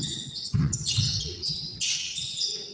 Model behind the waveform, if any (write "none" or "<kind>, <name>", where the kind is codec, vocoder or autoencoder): vocoder, WaveNeXt